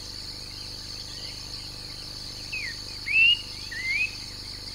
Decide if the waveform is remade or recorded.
recorded